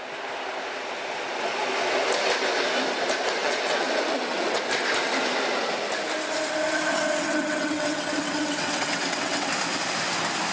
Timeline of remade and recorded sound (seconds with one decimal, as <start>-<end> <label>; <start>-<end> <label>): 0.0-3.4 recorded; 3.4-4.6 remade; 4.6-6.9 recorded; 6.9-9.5 remade; 9.5-10.5 recorded